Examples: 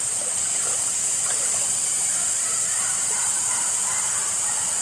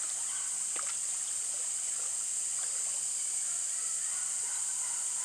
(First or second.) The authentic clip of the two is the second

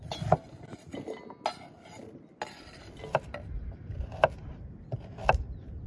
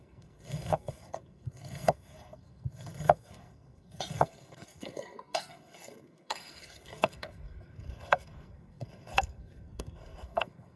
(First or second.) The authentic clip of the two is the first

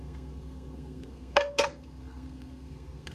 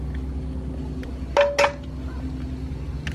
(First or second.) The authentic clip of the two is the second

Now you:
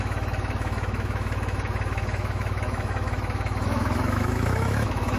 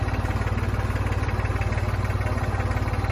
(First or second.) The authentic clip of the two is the second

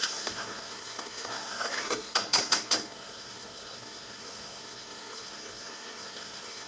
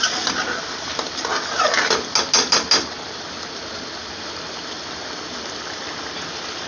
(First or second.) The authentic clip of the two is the second